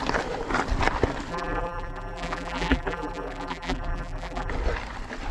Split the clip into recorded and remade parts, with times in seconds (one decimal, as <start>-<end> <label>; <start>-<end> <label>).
0.0-1.3 recorded; 1.3-4.5 remade; 4.5-5.3 recorded